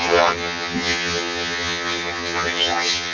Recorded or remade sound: remade